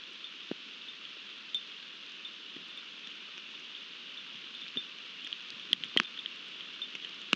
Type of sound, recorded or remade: recorded